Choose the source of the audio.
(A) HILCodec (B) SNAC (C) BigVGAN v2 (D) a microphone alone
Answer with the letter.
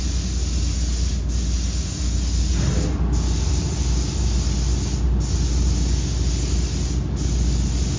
D